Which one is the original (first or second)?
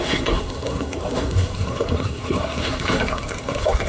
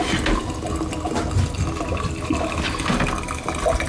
second